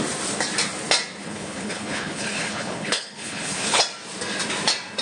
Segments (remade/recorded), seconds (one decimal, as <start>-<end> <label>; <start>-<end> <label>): 0.0-1.2 recorded; 1.2-3.8 remade; 3.8-5.0 recorded